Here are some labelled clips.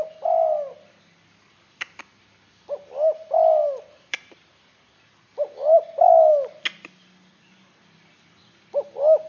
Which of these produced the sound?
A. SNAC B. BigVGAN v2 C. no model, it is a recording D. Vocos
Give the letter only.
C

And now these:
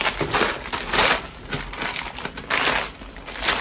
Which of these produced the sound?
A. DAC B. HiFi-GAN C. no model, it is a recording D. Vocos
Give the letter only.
C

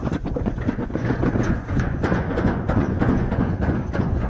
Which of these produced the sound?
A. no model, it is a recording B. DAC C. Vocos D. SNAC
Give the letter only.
C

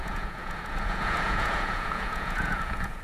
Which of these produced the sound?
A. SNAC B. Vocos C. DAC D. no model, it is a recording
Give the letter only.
B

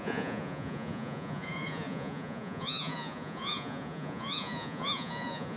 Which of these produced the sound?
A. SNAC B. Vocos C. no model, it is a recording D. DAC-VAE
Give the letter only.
B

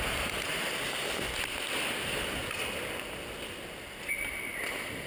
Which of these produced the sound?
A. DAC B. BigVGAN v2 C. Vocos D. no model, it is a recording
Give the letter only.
D